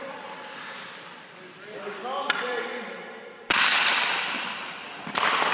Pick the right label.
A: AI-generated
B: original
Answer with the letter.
A